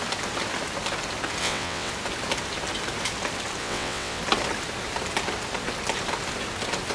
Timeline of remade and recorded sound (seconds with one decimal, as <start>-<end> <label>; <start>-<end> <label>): 0.0-1.4 recorded; 1.4-1.9 remade; 1.9-3.6 recorded; 3.6-4.2 remade; 4.2-6.9 recorded